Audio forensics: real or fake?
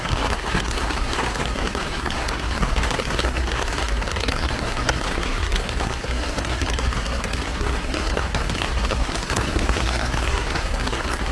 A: fake